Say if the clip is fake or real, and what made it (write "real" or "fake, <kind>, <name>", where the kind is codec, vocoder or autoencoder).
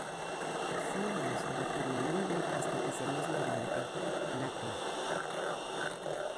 fake, vocoder, BigVGAN v2